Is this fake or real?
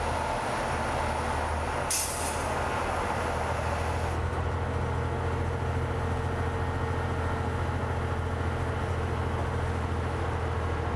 real